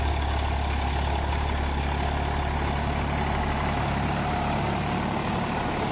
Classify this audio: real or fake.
real